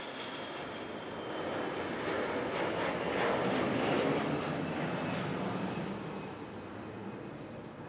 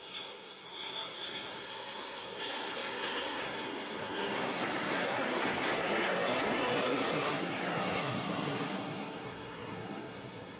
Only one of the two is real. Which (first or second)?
first